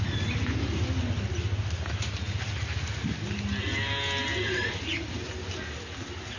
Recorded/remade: recorded